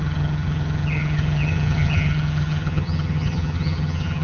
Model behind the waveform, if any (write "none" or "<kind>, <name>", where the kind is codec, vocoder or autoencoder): vocoder, HiFi-GAN